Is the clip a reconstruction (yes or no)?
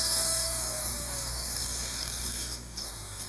yes